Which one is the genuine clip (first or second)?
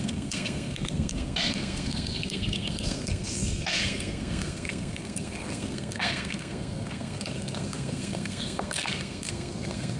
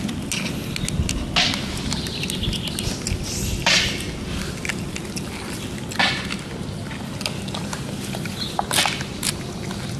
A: second